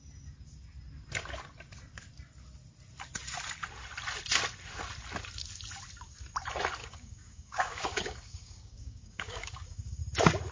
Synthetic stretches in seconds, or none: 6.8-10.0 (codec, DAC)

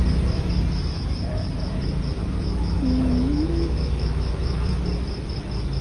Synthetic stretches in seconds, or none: 2.2-4.7 (autoencoder, DAC-VAE)

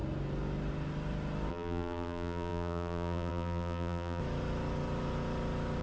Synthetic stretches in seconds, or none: 1.5-4.2 (vocoder, BigVGAN v2)

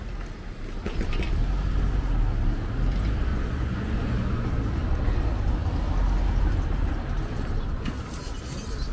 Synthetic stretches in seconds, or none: 3.3-4.5 (vocoder, Vocos)

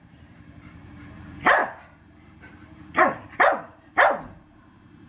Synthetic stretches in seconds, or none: 0.0-5.1 (vocoder, BigVGAN v2)

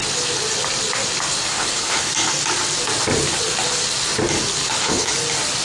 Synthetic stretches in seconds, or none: 1.5-2.1 (codec, HILCodec); 4.6-5.1

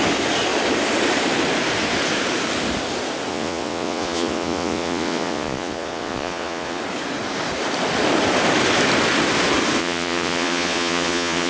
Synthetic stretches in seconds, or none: 3.3-6.8 (vocoder, Vocos); 9.8-11.5

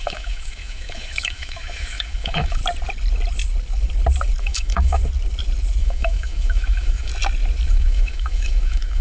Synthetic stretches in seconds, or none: 0.0-2.6 (autoencoder, DAC-VAE); 4.4-5.0; 5.8-7.1; 7.7-9.0